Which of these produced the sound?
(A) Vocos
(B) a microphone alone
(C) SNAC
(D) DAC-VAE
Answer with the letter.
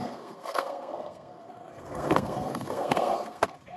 C